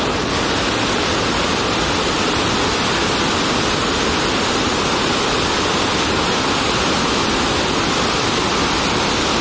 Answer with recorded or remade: recorded